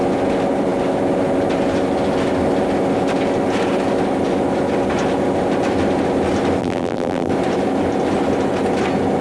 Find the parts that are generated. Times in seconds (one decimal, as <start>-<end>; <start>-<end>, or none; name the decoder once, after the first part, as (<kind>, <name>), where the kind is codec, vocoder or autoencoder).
6.6-7.3 (vocoder, BigVGAN v2)